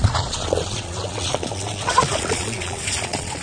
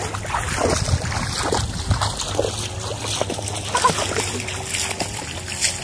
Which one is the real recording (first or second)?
second